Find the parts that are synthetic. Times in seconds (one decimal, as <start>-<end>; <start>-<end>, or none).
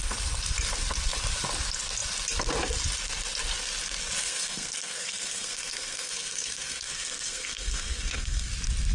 4.2-8.5